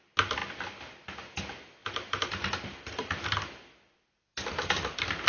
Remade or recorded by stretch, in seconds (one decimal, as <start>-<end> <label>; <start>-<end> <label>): 0.0-0.4 recorded; 0.4-1.3 remade; 1.3-1.8 recorded; 1.8-5.3 remade